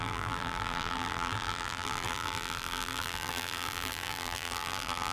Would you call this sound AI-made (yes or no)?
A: yes